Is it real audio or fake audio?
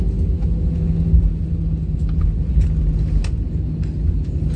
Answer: real